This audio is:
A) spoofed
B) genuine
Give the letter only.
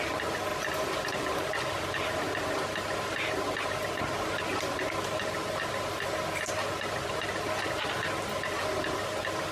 B